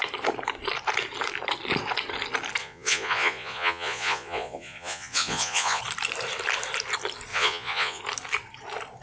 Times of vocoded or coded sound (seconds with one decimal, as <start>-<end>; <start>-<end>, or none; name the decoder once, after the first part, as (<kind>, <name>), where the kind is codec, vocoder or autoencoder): 2.6-5.8 (vocoder, Vocos); 7.3-8.0